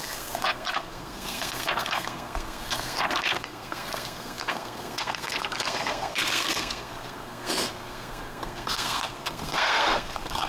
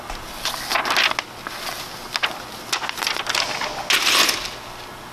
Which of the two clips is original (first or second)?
second